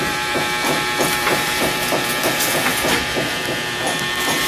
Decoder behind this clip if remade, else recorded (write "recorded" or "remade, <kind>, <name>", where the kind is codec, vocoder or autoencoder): remade, vocoder, BigVGAN v2